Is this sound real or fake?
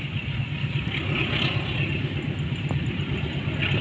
real